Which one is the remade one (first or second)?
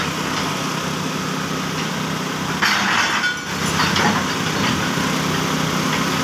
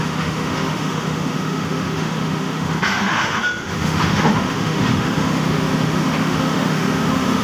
second